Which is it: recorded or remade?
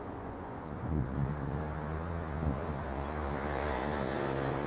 remade